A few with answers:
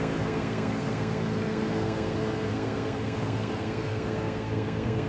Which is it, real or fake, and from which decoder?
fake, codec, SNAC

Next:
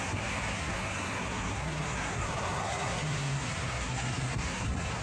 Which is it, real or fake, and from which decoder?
fake, codec, SNAC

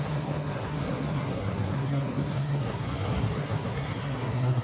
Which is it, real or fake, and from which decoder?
fake, codec, SNAC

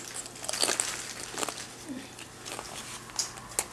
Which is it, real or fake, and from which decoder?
real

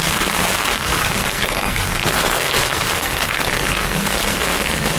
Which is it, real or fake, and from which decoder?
fake, codec, SNAC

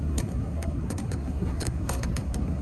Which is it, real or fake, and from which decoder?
fake, codec, SNAC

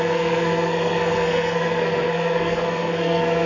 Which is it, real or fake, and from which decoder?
fake, codec, SNAC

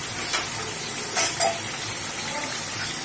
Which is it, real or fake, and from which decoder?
real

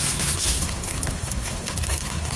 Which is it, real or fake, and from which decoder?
fake, codec, SNAC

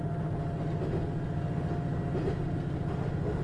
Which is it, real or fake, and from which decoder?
real